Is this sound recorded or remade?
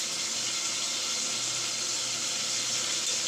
recorded